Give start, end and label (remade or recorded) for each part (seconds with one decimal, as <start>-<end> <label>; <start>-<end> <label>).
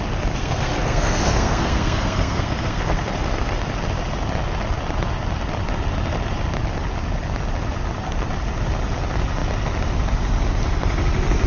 0.0-0.4 recorded; 0.4-3.6 remade; 3.6-11.5 recorded